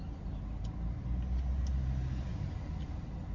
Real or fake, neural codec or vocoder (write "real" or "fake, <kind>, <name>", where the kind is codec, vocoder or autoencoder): real